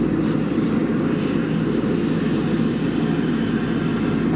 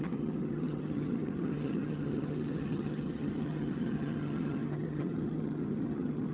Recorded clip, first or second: first